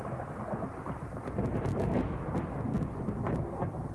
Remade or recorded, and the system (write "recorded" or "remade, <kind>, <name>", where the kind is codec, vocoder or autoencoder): recorded